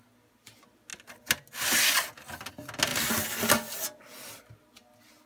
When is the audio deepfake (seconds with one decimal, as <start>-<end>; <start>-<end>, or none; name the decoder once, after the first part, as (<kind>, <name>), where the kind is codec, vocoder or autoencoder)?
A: none